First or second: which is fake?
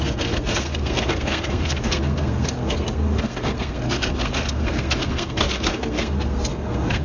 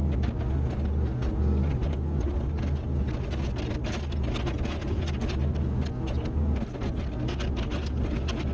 first